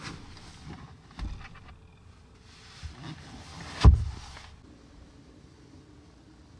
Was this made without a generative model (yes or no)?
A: yes